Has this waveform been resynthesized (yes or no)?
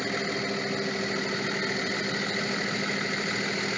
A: no